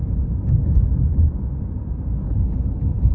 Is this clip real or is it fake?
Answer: real